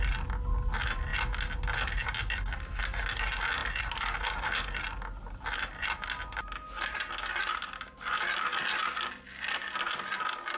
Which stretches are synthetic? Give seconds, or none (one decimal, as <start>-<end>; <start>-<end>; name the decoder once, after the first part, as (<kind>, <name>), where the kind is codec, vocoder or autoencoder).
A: none